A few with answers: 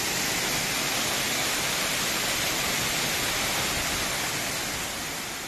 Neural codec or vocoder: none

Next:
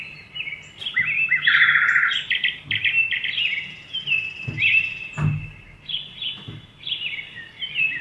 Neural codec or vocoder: none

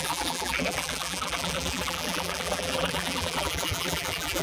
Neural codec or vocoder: vocoder, BigVGAN v2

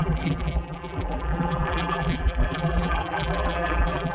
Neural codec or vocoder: vocoder, BigVGAN v2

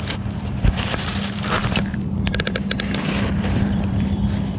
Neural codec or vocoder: vocoder, BigVGAN v2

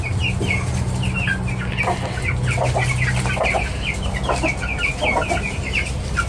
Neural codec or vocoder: none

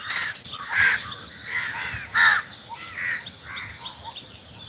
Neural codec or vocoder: none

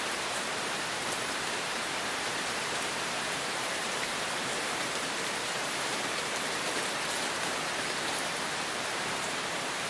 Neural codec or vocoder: vocoder, BigVGAN v2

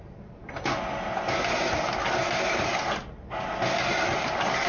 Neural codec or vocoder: none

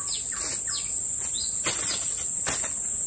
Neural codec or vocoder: none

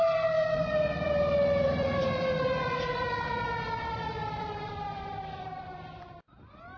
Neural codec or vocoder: vocoder, BigVGAN v2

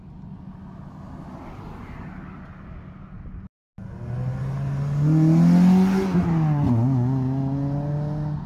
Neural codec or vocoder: none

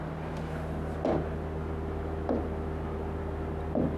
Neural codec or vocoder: none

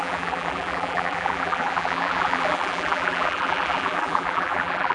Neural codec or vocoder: vocoder, BigVGAN v2